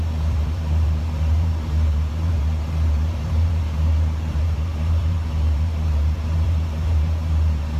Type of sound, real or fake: fake